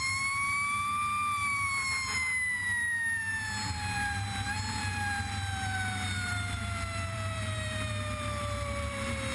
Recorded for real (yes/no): no